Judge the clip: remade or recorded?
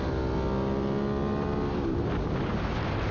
recorded